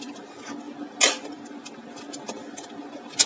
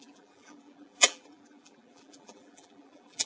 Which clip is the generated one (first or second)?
second